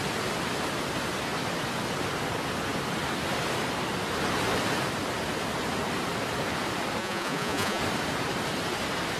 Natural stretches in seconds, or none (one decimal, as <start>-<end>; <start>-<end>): 0.0-7.0; 7.8-9.2